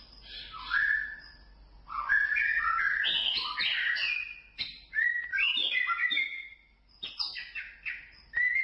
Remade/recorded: recorded